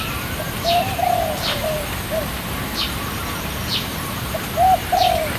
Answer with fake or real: fake